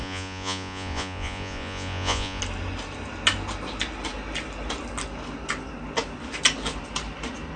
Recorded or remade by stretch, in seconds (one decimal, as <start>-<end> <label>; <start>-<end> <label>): 0.0-2.4 remade; 2.4-7.6 recorded